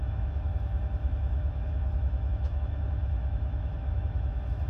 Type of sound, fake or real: fake